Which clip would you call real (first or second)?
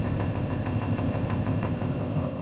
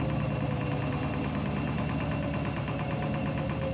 second